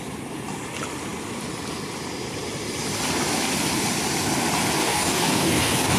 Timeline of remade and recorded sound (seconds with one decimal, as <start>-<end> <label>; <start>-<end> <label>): 0.0-4.8 recorded; 4.8-6.0 remade